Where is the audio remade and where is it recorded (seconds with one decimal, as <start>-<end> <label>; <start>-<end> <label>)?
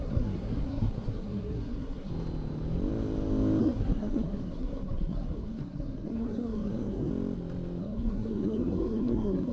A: 0.0-2.1 remade; 2.1-3.6 recorded; 3.6-7.1 remade; 7.1-7.8 recorded; 7.8-9.5 remade